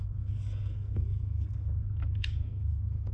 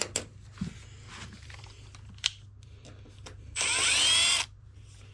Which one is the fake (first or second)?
first